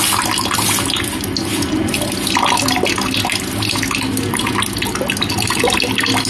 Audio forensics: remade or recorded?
recorded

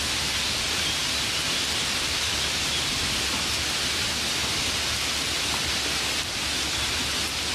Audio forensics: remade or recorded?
recorded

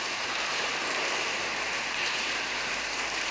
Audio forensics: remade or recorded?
remade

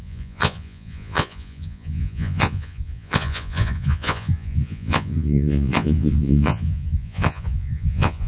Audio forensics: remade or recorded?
remade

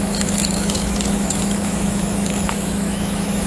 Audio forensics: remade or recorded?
remade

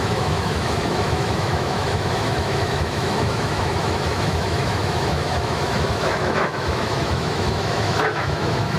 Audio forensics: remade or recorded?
remade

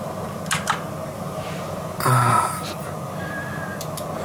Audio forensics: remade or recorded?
recorded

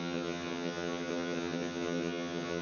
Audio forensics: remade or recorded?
remade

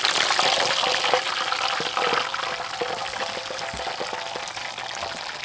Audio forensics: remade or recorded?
recorded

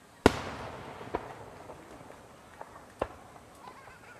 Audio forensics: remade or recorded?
recorded